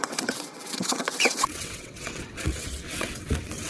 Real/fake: fake